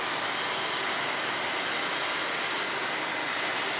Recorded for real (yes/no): yes